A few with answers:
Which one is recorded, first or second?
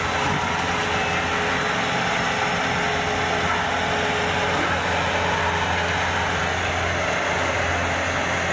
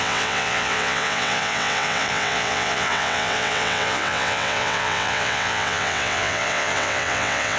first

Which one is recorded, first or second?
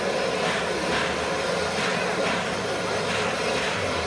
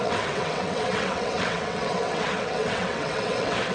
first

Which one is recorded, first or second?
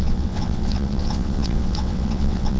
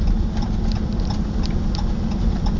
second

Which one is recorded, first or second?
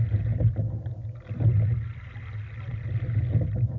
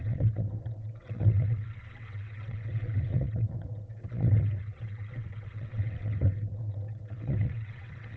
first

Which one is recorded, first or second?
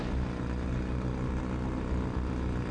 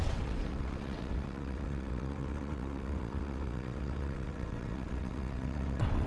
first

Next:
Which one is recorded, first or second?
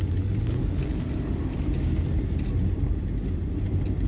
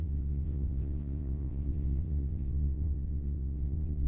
first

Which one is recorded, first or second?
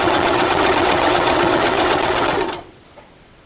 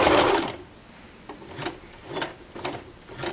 second